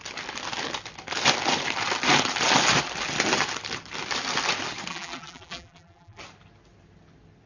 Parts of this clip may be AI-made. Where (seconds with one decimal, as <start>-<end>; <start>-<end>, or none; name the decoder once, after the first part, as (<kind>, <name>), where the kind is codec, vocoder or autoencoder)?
4.9-6.2 (vocoder, BigVGAN v2)